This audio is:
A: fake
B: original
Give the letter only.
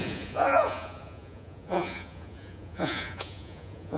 A